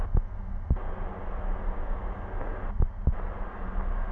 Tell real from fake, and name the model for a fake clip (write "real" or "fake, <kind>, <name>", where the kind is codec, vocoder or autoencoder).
real